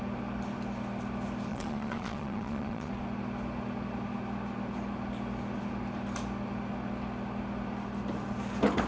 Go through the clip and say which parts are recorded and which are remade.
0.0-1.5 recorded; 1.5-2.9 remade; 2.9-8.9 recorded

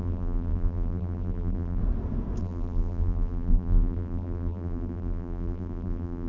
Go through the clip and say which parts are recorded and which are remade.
0.0-1.8 remade; 1.8-2.4 recorded; 2.4-6.3 remade

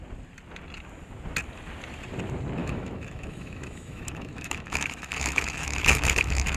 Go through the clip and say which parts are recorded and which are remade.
0.0-2.6 recorded; 2.6-6.6 remade